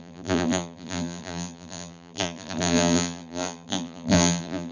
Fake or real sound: fake